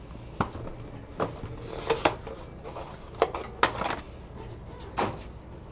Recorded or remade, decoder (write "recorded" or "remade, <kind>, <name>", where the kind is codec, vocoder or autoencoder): recorded